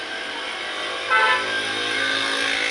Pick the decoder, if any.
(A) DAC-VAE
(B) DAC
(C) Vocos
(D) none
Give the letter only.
D